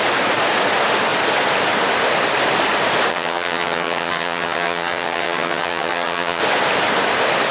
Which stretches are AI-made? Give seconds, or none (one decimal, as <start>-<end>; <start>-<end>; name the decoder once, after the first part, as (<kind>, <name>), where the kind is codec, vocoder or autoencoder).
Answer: 3.1-6.4 (vocoder, HiFi-GAN)